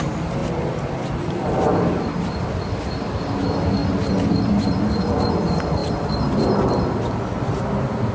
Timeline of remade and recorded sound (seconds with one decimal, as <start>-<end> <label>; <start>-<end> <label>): 0.0-8.1 recorded